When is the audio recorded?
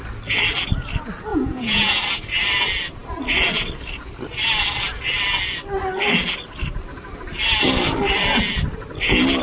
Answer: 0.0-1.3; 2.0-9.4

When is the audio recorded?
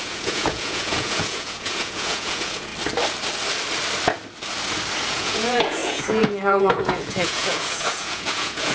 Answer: 2.7-5.1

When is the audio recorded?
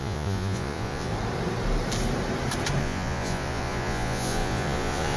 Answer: 1.1-2.8